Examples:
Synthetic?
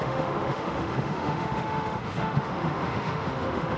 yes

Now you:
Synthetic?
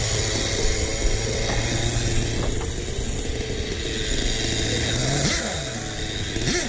no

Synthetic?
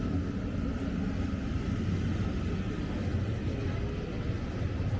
no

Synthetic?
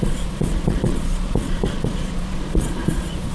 yes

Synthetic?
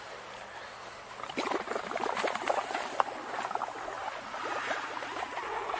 no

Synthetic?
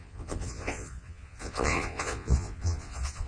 yes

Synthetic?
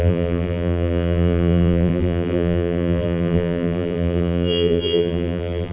yes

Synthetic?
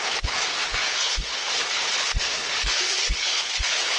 yes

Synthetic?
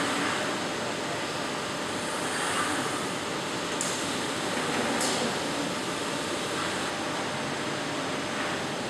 no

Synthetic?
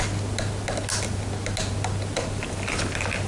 no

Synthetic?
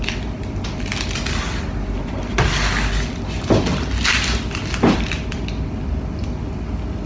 no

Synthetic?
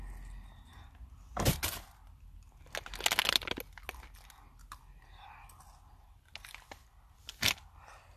no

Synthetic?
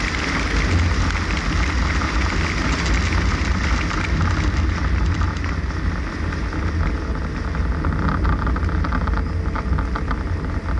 no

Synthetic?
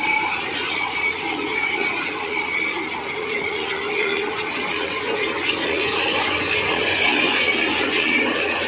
yes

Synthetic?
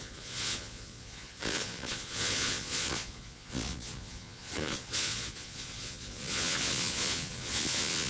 yes